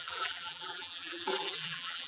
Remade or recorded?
remade